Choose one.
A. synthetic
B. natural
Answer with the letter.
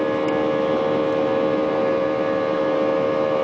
B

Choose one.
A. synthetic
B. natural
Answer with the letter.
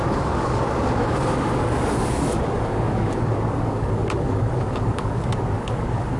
A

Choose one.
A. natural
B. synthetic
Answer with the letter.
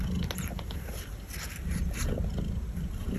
A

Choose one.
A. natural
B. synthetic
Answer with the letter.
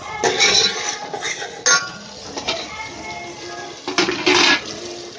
A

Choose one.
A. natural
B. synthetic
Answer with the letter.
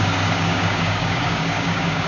B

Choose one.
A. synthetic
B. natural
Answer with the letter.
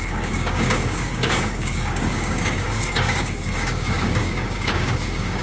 A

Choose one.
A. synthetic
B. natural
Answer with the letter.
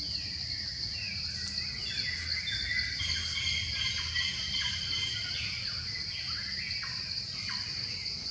B